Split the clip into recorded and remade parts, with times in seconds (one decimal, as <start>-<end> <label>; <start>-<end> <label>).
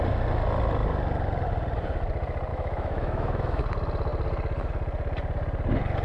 0.0-2.5 recorded; 2.5-3.6 remade; 3.6-6.0 recorded